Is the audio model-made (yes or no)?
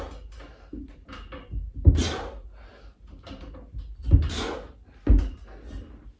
no